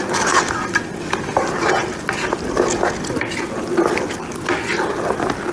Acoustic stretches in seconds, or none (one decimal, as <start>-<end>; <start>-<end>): 0.0-5.5